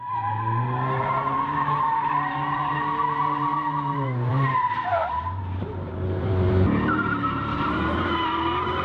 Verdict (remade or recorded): remade